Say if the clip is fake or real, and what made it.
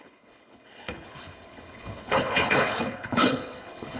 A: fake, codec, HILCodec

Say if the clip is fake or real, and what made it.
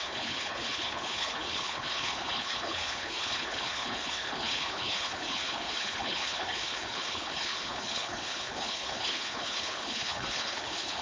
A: fake, codec, HILCodec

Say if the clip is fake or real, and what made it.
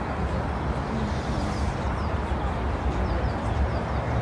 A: real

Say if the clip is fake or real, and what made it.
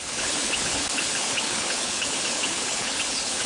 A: fake, codec, HILCodec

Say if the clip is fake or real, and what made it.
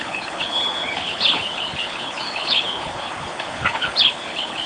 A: fake, codec, HILCodec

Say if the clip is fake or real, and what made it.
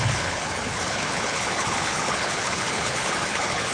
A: fake, codec, HILCodec